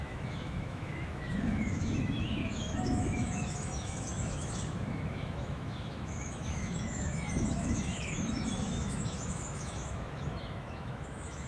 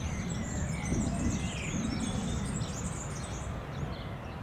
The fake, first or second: first